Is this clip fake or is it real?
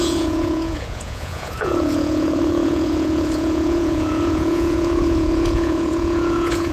fake